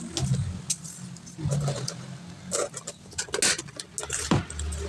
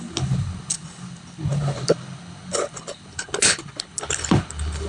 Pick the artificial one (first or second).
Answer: second